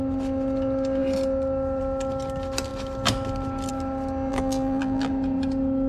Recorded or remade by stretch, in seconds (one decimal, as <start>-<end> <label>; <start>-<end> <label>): 0.0-4.3 recorded; 4.3-5.1 remade; 5.1-5.9 recorded